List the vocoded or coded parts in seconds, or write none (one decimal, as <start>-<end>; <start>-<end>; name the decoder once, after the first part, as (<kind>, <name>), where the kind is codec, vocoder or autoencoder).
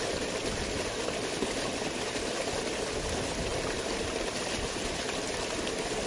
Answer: 3.5-4.5 (vocoder, BigVGAN v2)